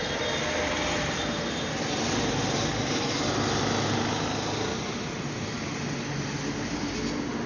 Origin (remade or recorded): recorded